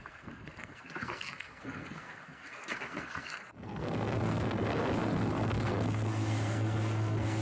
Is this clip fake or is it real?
fake